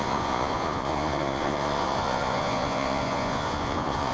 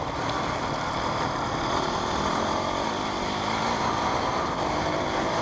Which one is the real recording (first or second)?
second